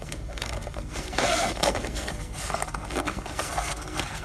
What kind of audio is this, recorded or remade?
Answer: remade